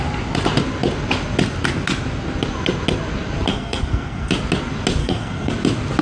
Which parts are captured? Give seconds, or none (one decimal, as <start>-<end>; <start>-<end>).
0.0-3.5; 4.3-5.0; 5.5-6.0